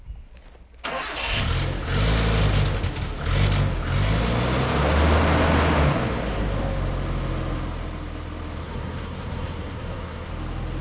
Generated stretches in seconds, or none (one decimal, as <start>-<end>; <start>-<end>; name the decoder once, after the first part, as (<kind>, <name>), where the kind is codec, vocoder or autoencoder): 8.6-10.3 (codec, SNAC)